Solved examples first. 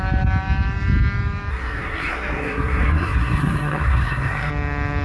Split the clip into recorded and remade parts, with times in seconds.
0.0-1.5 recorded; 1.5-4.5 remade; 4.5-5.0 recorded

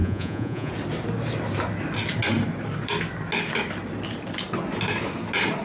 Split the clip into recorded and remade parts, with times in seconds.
0.0-0.7 remade; 0.7-5.6 recorded